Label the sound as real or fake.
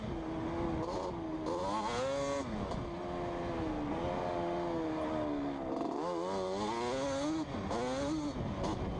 real